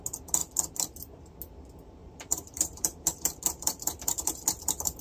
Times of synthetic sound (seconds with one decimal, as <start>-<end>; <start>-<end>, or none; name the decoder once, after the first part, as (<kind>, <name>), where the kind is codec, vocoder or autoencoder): 2.0-5.0 (vocoder, BigVGAN v2)